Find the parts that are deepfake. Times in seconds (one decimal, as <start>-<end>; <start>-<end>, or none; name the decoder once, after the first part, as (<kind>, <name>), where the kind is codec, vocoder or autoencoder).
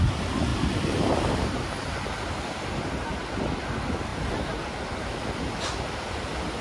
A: 0.5-2.4 (vocoder, BigVGAN v2); 4.1-6.1